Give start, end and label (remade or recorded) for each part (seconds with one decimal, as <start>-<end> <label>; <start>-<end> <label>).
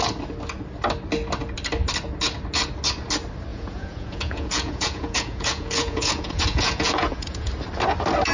0.0-3.5 recorded; 3.5-7.5 remade; 7.5-8.3 recorded